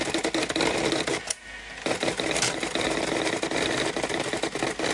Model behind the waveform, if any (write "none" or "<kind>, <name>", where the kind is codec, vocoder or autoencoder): none